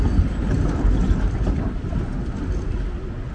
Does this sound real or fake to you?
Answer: real